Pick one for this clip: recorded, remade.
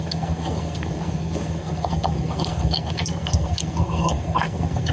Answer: remade